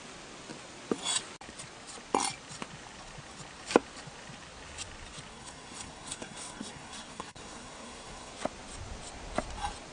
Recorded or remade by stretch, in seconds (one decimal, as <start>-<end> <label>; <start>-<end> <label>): 0.0-5.3 recorded; 5.3-8.3 remade; 8.3-9.9 recorded